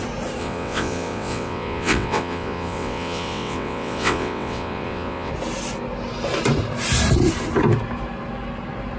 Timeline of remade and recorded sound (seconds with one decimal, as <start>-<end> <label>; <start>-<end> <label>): 0.0-0.4 recorded; 0.4-5.3 remade; 5.3-9.0 recorded